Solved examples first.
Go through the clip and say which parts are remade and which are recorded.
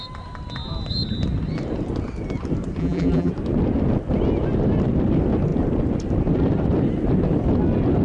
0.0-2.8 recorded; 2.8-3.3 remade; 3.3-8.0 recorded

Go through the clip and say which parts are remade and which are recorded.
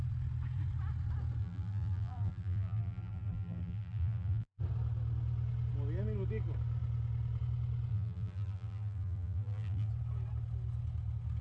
0.0-1.4 recorded; 1.4-4.6 remade; 4.6-7.9 recorded; 7.9-9.9 remade; 9.9-11.4 recorded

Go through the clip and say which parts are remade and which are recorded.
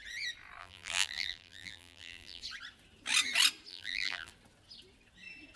0.0-0.6 recorded; 0.6-2.4 remade; 2.4-3.7 recorded; 3.7-4.3 remade; 4.3-5.6 recorded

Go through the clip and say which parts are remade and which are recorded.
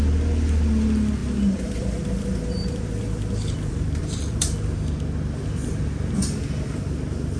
0.0-1.2 recorded; 1.2-4.7 remade; 4.7-7.4 recorded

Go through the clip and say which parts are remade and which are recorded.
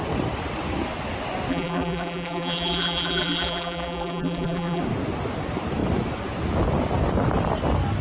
0.0-1.5 recorded; 1.5-4.8 remade; 4.8-8.0 recorded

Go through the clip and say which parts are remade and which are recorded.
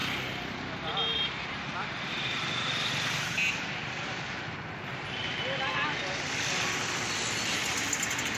0.0-8.4 recorded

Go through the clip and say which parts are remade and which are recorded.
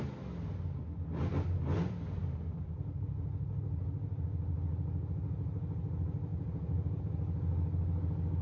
0.0-6.3 recorded; 6.3-7.0 remade; 7.0-8.4 recorded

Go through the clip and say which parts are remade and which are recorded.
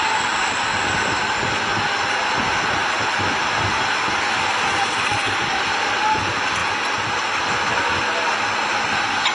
0.0-9.3 recorded